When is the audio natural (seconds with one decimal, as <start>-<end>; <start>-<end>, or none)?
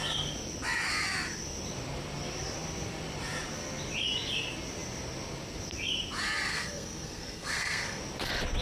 0.0-6.5; 8.0-8.6